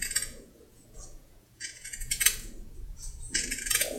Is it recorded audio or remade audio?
remade